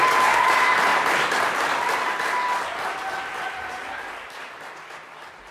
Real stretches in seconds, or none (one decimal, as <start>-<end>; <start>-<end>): 0.0-5.5